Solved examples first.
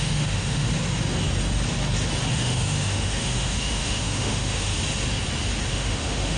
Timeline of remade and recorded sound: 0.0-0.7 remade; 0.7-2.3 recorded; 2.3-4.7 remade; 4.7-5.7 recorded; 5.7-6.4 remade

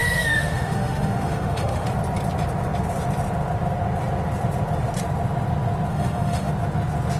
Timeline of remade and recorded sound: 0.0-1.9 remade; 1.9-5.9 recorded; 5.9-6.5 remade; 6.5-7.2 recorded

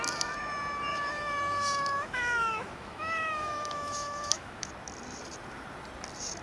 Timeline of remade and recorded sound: 0.0-0.9 recorded; 0.9-4.7 remade; 4.7-6.4 recorded